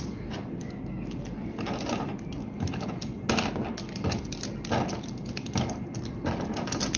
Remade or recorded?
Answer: recorded